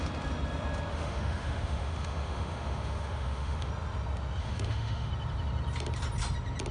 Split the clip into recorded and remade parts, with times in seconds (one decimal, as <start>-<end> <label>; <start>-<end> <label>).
0.0-0.9 recorded; 0.9-3.7 remade; 3.7-4.4 recorded; 4.4-5.1 remade; 5.1-6.7 recorded